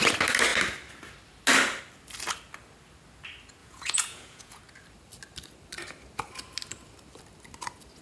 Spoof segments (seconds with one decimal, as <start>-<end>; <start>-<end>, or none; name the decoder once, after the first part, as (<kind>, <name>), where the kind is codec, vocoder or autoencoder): 3.6-4.6 (vocoder, Vocos)